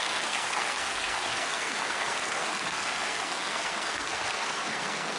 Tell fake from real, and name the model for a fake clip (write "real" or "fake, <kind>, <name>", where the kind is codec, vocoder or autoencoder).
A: fake, codec, SNAC